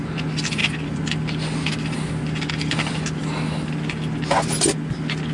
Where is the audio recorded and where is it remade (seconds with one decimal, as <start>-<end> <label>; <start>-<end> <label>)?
0.0-5.3 recorded